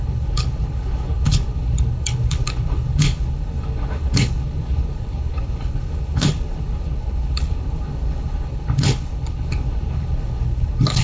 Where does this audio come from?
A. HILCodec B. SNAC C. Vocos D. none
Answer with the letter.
A